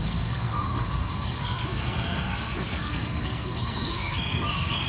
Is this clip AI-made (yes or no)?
yes